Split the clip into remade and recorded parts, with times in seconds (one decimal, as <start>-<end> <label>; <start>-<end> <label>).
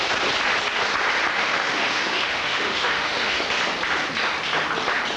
0.0-1.3 recorded; 1.3-3.4 remade; 3.4-5.2 recorded